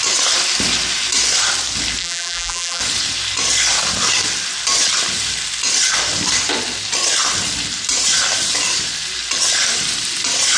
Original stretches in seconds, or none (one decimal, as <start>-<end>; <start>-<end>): 0.0-2.0; 2.8-10.6